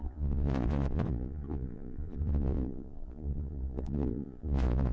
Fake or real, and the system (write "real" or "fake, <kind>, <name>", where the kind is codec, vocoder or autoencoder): fake, vocoder, Vocos